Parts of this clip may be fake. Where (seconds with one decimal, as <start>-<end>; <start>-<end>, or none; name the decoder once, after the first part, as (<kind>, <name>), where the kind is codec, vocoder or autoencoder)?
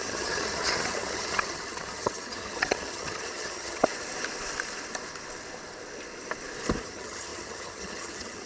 0.0-3.9 (vocoder, HiFi-GAN); 6.8-8.5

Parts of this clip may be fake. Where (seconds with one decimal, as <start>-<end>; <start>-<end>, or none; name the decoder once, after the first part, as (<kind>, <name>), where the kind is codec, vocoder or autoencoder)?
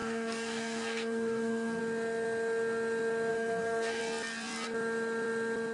0.0-1.8 (codec, SNAC); 3.3-4.0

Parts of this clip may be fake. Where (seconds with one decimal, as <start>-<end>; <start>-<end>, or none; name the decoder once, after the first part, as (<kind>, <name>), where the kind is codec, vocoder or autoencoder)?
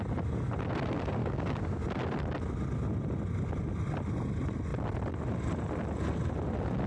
1.2-1.8 (codec, DAC)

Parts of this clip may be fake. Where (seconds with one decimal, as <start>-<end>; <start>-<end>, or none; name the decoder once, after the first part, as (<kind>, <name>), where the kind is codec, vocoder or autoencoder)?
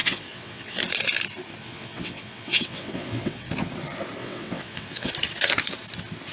0.0-0.8 (vocoder, WaveNeXt); 1.6-3.5; 4.2-5.1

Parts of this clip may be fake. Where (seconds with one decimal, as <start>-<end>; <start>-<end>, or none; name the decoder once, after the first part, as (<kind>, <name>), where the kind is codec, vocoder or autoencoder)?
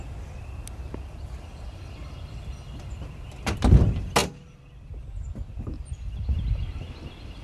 none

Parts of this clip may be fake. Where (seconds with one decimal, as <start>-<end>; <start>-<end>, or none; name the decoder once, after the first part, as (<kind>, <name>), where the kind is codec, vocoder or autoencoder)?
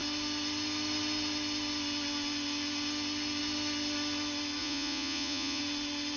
4.6-5.6 (vocoder, Vocos)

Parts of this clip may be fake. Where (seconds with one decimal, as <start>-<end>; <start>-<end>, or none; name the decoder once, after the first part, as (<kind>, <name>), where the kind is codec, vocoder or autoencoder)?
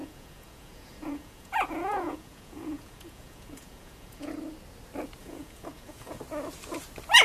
0.0-4.3 (vocoder, Vocos); 5.2-6.2